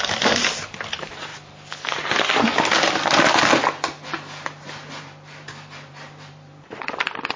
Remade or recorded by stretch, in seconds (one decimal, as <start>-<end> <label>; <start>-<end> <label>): 0.0-1.3 remade; 1.3-5.0 recorded; 5.0-7.4 remade